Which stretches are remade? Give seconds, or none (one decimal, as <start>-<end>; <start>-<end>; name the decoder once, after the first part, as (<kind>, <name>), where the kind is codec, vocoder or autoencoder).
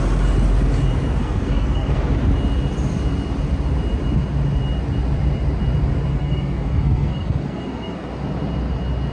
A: 1.2-2.1 (codec, SNAC); 6.1-8.1